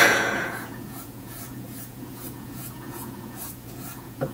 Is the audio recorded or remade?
remade